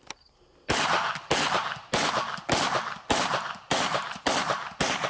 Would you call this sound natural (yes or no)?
yes